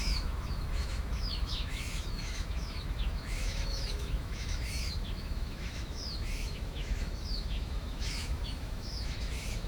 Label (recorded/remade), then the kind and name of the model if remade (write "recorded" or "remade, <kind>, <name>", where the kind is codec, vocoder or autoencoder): remade, autoencoder, DAC-VAE